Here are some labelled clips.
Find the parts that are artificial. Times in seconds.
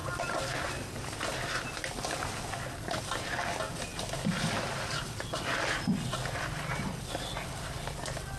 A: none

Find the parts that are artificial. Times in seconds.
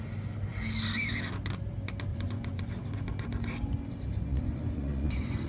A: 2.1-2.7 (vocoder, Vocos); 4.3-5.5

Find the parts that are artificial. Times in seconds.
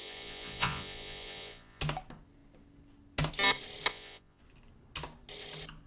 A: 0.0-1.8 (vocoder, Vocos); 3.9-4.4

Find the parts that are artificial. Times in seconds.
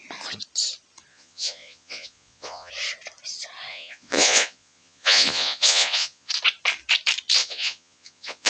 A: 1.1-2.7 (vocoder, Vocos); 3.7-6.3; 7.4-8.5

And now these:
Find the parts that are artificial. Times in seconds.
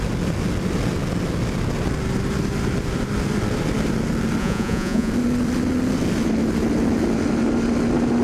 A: 4.4-5.1 (vocoder, Vocos)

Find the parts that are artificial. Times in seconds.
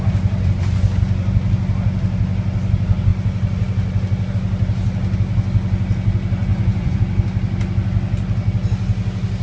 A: 6.5-7.0 (vocoder, Vocos)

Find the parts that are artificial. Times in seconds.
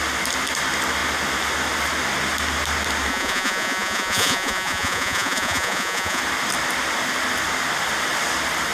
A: 3.1-6.2 (vocoder, Vocos)